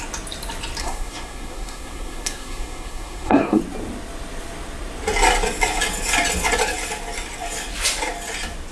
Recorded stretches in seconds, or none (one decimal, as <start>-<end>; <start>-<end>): 0.0-0.8; 3.6-8.7